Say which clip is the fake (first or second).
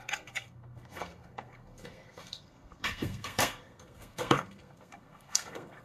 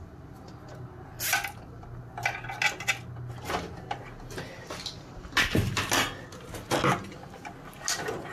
first